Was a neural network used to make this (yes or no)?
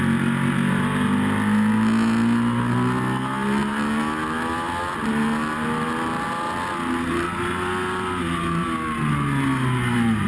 no